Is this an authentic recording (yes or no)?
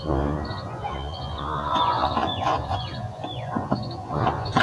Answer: no